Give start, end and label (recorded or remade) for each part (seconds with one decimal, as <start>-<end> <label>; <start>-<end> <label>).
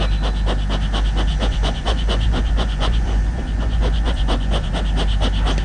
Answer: 0.0-1.3 recorded; 1.3-4.7 remade; 4.7-5.6 recorded